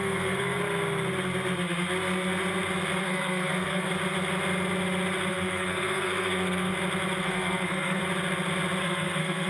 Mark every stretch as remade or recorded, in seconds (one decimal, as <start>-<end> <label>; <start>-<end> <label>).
0.0-0.6 remade; 0.6-3.0 recorded; 3.0-3.9 remade; 3.9-5.3 recorded; 5.3-6.7 remade; 6.7-7.2 recorded; 7.2-8.0 remade; 8.0-8.8 recorded; 8.8-9.5 remade